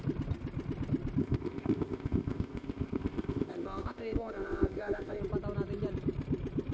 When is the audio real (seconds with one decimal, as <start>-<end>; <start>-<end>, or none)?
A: 0.0-1.2; 5.2-6.7